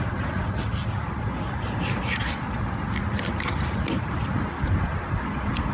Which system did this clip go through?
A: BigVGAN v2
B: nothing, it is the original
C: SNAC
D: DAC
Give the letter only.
B